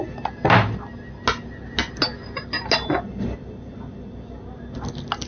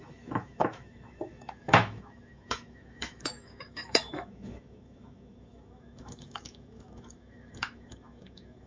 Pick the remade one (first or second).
second